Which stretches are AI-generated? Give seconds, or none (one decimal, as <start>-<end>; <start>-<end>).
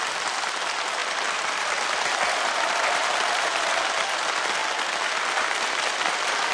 1.0-3.8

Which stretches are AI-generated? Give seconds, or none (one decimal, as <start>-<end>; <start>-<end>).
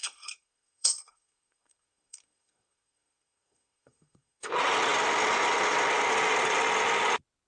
0.0-4.5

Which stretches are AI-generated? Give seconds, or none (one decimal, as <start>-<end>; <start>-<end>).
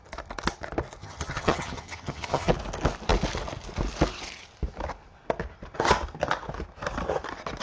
1.0-2.5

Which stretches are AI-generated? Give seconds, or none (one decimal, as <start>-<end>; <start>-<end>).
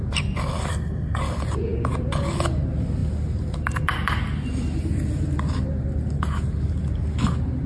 0.7-1.2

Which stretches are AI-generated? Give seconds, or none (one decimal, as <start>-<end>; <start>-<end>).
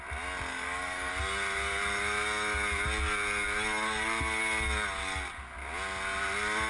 0.5-1.1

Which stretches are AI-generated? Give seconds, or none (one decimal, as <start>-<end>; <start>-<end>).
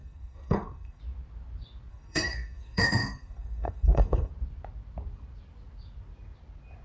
0.0-1.0; 1.9-4.3